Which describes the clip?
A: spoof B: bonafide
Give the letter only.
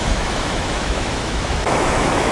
A